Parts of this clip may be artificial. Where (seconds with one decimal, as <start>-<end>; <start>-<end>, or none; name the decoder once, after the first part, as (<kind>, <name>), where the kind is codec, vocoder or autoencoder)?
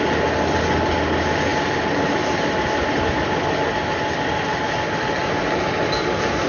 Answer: none